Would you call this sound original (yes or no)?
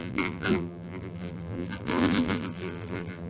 no